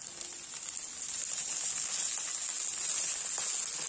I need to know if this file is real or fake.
real